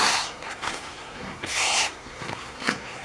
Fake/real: fake